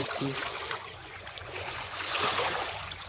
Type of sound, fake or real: fake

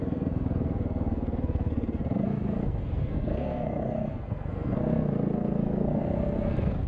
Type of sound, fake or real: fake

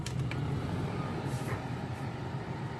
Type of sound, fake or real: fake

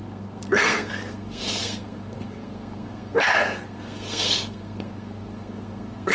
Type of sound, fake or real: fake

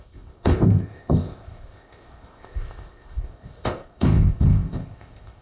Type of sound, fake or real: fake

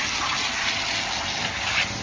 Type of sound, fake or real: real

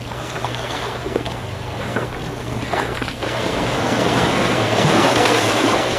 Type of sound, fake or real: fake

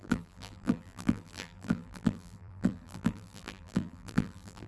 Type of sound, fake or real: fake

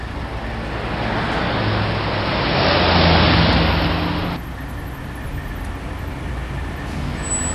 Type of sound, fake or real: real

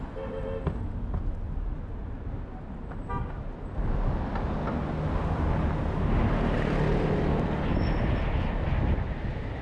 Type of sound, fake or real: real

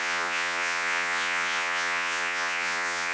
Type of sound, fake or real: fake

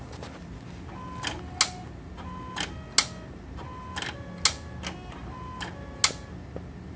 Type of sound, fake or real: real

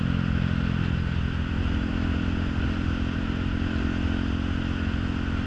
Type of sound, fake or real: real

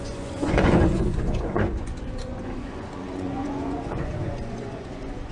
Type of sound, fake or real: fake